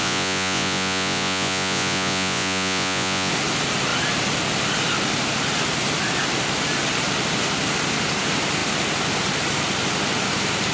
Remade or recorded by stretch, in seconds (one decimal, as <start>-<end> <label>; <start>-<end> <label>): 0.0-3.3 remade; 3.3-10.7 recorded